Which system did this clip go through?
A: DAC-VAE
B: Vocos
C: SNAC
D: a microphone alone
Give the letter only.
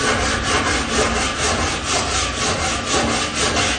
D